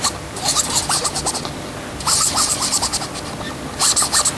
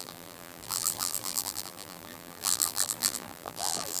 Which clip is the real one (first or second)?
first